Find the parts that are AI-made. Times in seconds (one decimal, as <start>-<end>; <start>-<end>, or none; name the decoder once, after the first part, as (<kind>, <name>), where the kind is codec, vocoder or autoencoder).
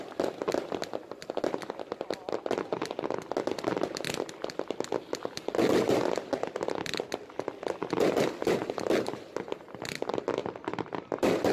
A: none